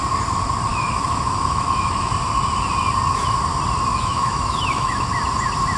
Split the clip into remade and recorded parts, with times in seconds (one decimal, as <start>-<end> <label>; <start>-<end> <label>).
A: 0.0-0.7 recorded; 0.7-2.1 remade; 2.1-3.9 recorded; 3.9-5.1 remade; 5.1-5.8 recorded